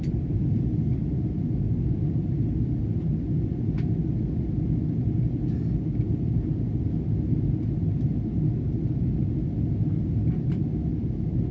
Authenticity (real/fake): real